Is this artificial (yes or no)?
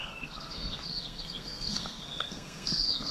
yes